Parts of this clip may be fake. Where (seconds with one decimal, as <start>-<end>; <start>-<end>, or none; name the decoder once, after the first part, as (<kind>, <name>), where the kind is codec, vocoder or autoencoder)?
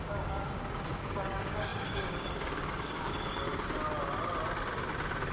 0.0-3.5 (codec, DAC)